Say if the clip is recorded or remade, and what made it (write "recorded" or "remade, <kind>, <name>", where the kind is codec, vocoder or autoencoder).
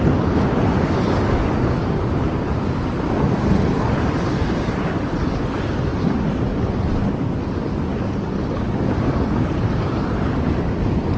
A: recorded